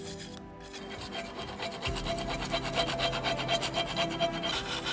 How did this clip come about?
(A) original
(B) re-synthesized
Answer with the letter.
A